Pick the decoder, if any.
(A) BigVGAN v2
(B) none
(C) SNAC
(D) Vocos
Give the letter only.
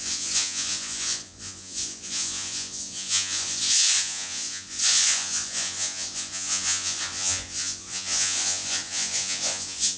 D